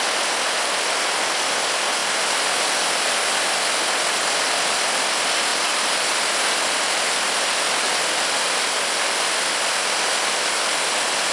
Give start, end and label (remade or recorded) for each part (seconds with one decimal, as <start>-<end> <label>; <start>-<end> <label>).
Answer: 0.0-5.5 recorded; 5.5-10.8 remade; 10.8-11.3 recorded